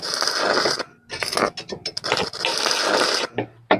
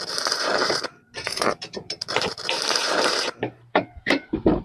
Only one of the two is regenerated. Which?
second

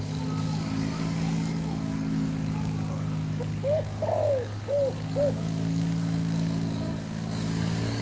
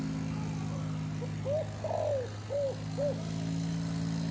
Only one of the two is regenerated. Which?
first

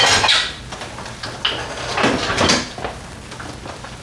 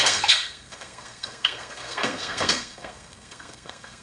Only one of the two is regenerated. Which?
second